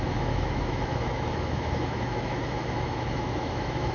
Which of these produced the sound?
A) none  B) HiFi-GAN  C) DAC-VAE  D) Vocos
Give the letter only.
C